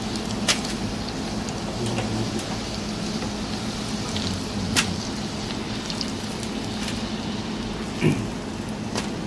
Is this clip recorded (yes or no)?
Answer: yes